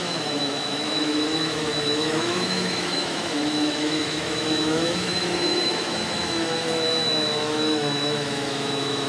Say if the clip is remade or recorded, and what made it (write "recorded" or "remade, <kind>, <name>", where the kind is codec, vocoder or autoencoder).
remade, autoencoder, DAC-VAE